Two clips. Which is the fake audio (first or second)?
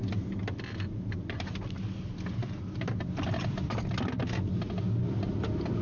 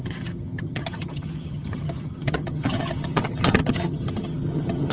second